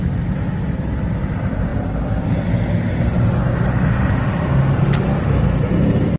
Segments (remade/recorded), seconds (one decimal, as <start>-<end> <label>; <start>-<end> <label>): 0.0-6.2 recorded